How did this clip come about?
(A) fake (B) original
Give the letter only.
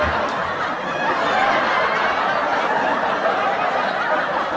B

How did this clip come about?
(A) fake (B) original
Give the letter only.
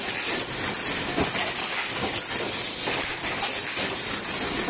B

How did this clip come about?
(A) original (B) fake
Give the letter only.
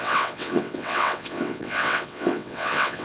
B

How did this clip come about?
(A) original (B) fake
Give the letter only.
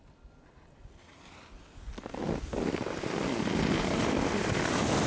A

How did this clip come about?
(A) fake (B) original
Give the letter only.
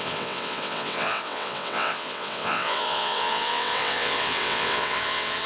A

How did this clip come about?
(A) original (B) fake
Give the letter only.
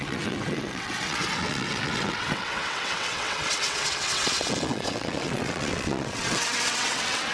B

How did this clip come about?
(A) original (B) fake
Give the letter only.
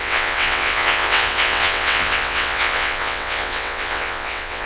B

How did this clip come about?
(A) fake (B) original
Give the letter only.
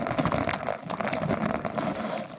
B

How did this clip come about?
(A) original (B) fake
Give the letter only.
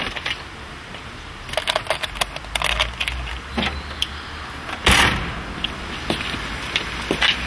A